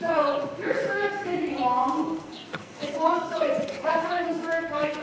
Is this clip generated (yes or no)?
yes